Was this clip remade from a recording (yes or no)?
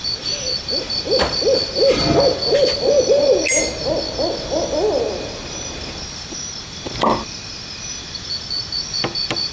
no